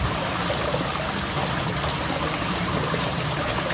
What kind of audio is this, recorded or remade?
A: recorded